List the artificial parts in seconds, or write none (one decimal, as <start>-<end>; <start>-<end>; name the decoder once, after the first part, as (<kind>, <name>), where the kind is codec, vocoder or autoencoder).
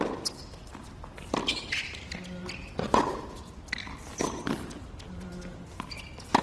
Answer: 2.6-3.1 (vocoder, Vocos)